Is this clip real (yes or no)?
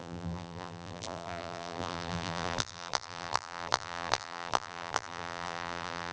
no